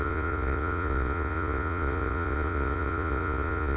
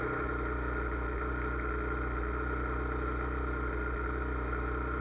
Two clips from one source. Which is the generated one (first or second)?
first